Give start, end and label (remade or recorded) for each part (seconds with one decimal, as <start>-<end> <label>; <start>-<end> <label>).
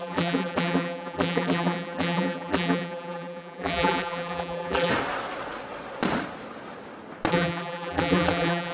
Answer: 0.0-4.9 remade; 4.9-7.3 recorded; 7.3-8.7 remade